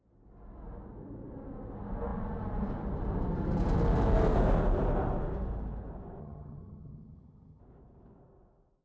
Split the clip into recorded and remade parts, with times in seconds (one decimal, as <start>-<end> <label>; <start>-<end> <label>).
0.0-6.2 recorded; 6.2-7.6 remade; 7.6-8.8 recorded